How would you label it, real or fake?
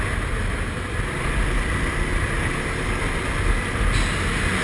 real